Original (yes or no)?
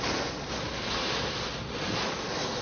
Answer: yes